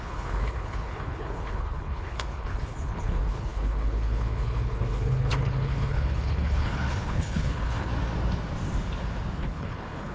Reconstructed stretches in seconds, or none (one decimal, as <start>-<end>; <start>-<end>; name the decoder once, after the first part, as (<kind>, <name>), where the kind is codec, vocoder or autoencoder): 0.0-7.9 (codec, HILCodec); 9.4-10.1